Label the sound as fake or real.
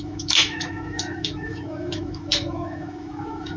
fake